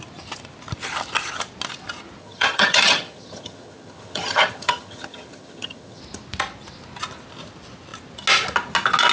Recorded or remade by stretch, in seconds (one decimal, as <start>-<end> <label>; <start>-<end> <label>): 0.0-2.2 recorded; 2.2-6.0 remade; 6.0-9.1 recorded